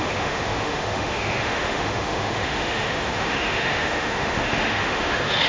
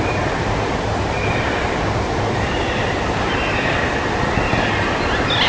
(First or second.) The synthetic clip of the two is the first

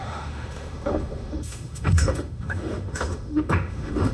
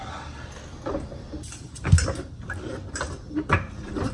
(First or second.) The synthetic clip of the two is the first